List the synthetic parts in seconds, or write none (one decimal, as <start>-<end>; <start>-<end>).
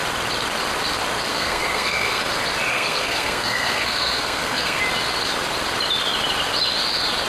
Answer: 1.3-2.2; 2.7-4.8